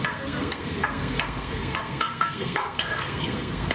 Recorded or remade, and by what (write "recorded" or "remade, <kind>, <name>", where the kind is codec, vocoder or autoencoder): remade, codec, SNAC